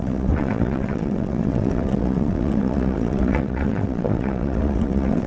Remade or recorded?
remade